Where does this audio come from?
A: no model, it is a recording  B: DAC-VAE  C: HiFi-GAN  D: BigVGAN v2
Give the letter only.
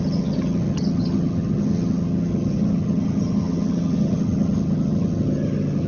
C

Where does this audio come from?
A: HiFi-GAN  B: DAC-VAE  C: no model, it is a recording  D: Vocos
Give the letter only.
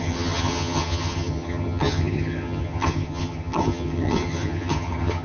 A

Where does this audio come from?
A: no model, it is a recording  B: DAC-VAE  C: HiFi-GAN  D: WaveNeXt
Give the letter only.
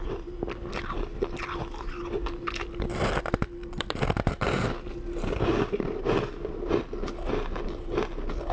A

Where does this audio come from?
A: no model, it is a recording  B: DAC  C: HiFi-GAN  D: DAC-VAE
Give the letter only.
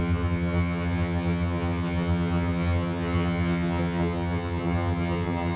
C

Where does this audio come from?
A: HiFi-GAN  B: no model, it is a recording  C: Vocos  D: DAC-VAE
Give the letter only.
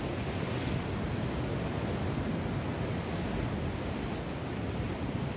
B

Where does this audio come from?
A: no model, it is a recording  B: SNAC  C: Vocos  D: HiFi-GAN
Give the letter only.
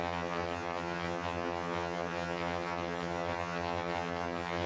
D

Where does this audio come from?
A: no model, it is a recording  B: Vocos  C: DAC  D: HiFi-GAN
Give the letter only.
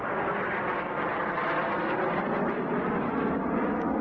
A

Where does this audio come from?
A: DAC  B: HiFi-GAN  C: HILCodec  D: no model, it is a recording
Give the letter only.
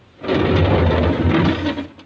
D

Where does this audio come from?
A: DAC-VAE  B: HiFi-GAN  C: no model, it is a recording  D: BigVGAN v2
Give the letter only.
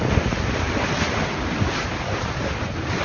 C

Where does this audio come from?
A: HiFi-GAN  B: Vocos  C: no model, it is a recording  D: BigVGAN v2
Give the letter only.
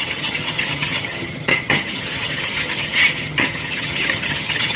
A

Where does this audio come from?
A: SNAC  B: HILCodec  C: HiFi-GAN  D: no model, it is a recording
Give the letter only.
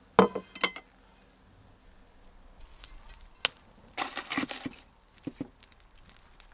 D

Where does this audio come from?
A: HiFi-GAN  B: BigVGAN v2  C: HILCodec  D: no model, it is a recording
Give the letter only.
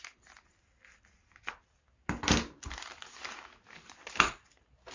D